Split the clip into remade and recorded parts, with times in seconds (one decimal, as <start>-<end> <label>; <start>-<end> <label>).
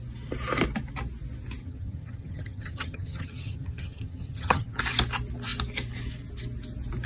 0.0-1.6 recorded; 1.6-4.8 remade; 4.8-7.1 recorded